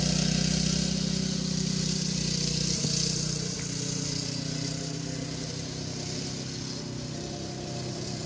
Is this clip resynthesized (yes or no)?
no